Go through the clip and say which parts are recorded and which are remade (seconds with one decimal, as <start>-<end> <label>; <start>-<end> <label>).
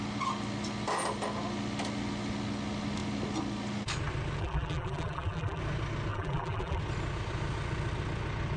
0.0-4.4 recorded; 4.4-5.6 remade; 5.6-6.1 recorded; 6.1-6.8 remade; 6.8-8.6 recorded